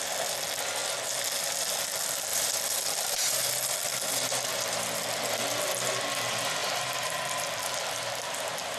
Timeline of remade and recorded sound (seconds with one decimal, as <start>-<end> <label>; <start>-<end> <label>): 0.0-2.3 recorded; 2.3-5.5 remade; 5.5-6.6 recorded; 6.6-8.2 remade; 8.2-8.8 recorded